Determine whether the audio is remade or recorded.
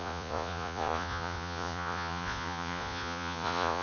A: remade